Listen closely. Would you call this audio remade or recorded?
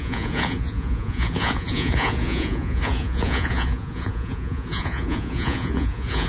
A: remade